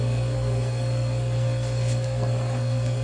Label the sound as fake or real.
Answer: fake